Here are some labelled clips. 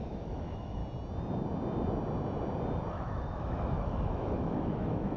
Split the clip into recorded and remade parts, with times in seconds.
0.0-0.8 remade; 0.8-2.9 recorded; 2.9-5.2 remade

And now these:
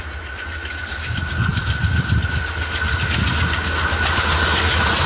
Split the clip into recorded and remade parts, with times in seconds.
0.0-5.1 recorded

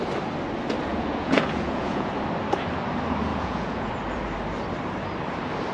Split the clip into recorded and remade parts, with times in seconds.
0.0-0.9 recorded; 0.9-2.1 remade; 2.1-3.3 recorded; 3.3-3.9 remade; 3.9-5.7 recorded

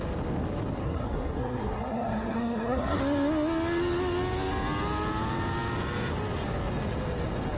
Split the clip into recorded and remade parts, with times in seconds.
0.0-0.8 recorded; 0.8-3.0 remade; 3.0-7.6 recorded

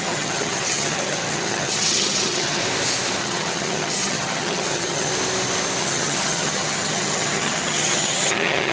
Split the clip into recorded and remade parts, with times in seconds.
0.0-2.6 remade; 2.6-3.2 recorded; 3.2-5.1 remade; 5.1-5.8 recorded; 5.8-8.7 remade

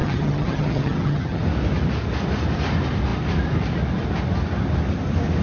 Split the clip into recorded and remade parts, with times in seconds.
0.0-1.4 remade; 1.4-5.4 recorded